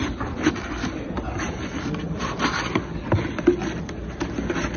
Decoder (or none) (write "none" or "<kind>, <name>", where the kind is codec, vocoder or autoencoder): none